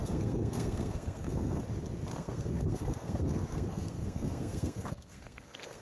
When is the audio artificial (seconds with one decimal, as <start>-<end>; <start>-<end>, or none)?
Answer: 0.0-1.6; 2.1-5.8